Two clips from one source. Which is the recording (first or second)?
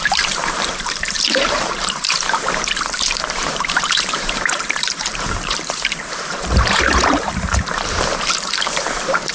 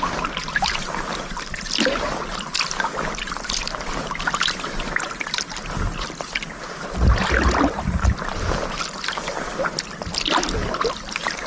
second